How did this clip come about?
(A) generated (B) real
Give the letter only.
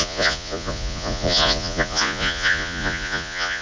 A